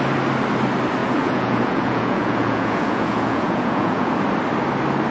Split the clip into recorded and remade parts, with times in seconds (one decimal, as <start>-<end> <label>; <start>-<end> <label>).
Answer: 0.0-1.0 recorded; 1.0-4.1 remade; 4.1-5.1 recorded